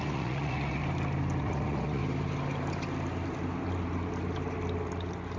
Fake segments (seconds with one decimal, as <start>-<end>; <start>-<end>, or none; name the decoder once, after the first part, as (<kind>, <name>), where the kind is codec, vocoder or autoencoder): 0.0-0.8 (vocoder, Vocos); 1.4-2.0